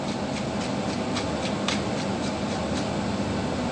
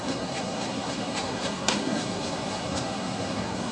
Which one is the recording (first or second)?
first